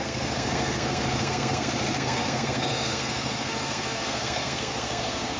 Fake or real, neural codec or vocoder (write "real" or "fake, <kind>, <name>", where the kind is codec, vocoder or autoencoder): fake, codec, SNAC